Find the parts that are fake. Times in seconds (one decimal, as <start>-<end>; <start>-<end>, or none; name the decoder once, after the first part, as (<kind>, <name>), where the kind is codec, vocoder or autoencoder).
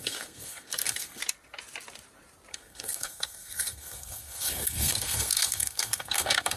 0.0-1.2 (codec, SNAC); 2.5-6.6